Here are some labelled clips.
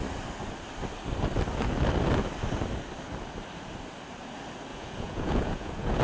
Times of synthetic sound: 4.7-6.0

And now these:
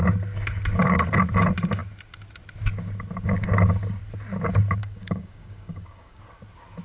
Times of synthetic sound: 4.8-6.2

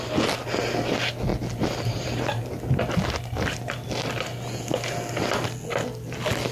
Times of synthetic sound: none

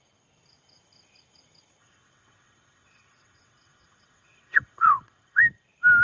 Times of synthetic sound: 1.8-5.4

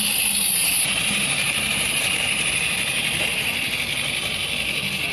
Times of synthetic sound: 0.6-3.7